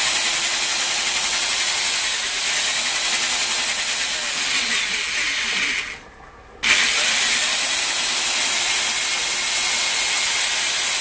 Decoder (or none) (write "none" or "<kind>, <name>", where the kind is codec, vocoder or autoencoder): none